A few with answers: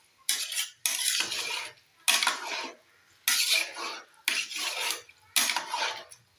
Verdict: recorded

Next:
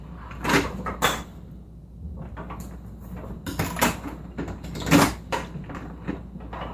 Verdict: recorded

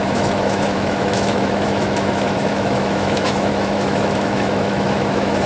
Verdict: remade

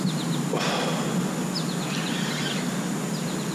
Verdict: recorded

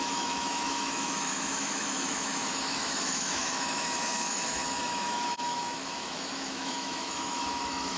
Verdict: remade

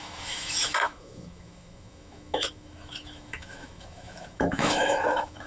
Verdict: remade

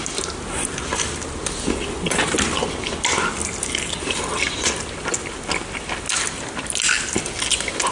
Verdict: recorded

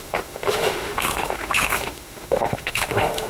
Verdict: remade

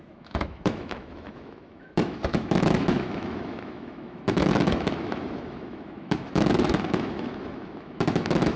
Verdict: remade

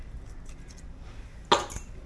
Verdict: recorded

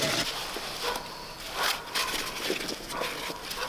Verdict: recorded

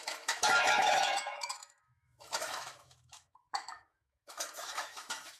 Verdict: remade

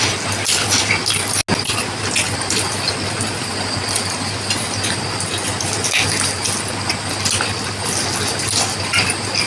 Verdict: recorded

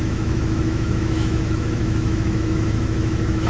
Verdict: remade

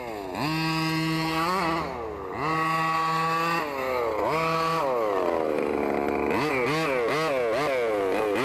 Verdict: recorded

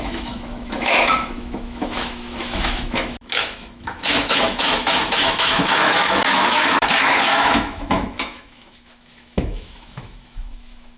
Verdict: remade